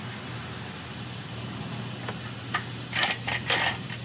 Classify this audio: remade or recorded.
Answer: recorded